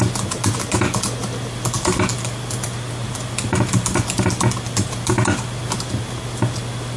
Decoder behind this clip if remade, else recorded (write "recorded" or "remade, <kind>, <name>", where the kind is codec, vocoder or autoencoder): recorded